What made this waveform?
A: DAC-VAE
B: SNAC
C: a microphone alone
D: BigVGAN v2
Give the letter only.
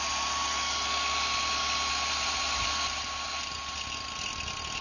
C